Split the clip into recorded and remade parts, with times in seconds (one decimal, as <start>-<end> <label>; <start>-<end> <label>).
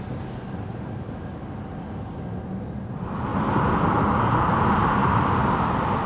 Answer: 0.0-6.1 recorded